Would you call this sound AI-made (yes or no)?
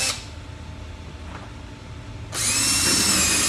no